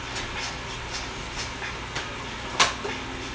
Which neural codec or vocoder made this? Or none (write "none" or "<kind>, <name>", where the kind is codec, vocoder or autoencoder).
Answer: none